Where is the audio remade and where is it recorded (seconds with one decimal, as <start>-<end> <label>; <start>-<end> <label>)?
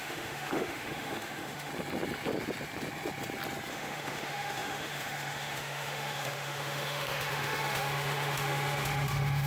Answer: 0.0-1.7 remade; 1.7-3.7 recorded; 3.7-9.5 remade